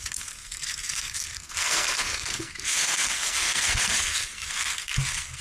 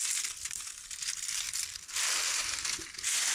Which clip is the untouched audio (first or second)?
second